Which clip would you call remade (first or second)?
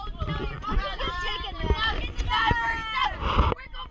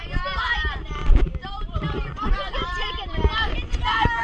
second